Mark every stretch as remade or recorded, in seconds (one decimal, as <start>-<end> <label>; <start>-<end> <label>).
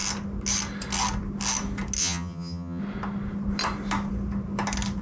0.0-2.0 recorded; 2.0-2.8 remade; 2.8-5.0 recorded